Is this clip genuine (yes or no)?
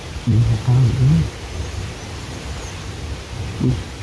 yes